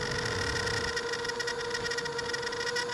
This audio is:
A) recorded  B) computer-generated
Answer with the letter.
A